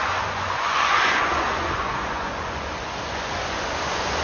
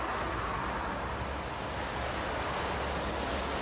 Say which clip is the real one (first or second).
second